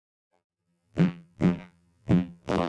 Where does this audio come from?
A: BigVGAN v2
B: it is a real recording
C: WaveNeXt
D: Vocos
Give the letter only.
A